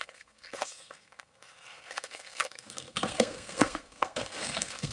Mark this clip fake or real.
fake